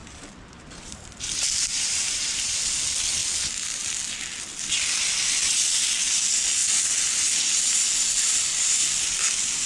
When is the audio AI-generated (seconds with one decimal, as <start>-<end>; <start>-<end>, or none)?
0.0-2.6